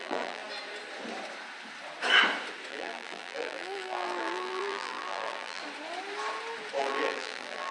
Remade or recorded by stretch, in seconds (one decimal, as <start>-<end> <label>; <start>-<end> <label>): 0.0-0.4 remade; 0.4-2.7 recorded; 2.7-5.6 remade; 5.6-6.8 recorded; 6.8-7.7 remade